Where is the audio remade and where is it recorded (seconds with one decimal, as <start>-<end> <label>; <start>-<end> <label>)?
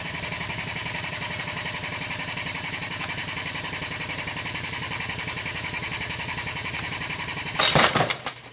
0.0-8.5 remade